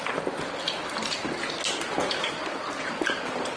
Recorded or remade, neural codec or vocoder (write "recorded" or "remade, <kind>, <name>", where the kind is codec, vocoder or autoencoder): recorded